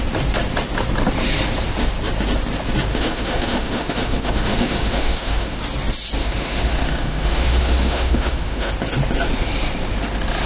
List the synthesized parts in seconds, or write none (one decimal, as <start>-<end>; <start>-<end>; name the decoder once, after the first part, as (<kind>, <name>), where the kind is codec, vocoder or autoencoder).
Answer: 2.9-5.6 (autoencoder, DAC-VAE); 6.2-8.7